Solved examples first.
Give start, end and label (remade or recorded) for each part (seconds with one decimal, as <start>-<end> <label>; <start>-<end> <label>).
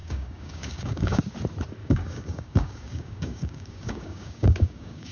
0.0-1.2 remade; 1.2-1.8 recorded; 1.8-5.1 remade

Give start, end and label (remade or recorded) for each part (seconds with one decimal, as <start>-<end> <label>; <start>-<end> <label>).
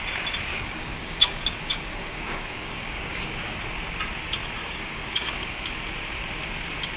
0.0-0.5 recorded; 0.5-3.6 remade; 3.6-4.6 recorded; 4.6-5.7 remade; 5.7-7.0 recorded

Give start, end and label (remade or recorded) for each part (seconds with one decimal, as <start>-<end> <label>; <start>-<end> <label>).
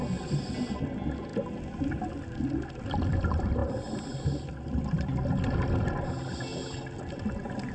0.0-7.7 recorded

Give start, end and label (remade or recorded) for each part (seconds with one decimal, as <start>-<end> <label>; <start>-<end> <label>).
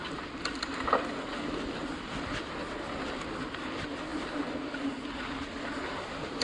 0.0-6.4 recorded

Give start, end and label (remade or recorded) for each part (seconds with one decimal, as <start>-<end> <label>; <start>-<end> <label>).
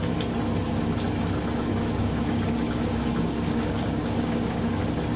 0.0-1.7 recorded; 1.7-4.8 remade; 4.8-5.2 recorded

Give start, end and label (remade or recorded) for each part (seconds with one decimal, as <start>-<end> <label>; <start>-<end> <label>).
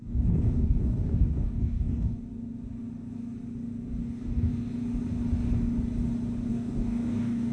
0.0-2.1 remade; 2.1-4.0 recorded; 4.0-4.5 remade; 4.5-6.5 recorded; 6.5-7.5 remade